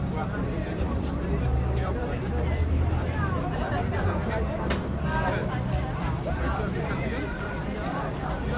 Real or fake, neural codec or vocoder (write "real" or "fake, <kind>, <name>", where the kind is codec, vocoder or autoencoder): fake, vocoder, BigVGAN v2